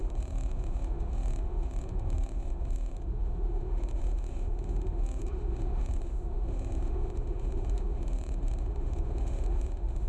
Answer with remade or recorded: remade